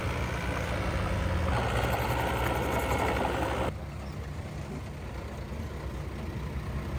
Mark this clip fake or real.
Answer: real